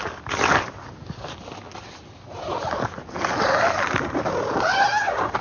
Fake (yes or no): no